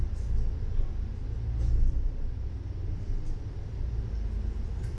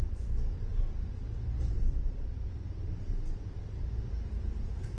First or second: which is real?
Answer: first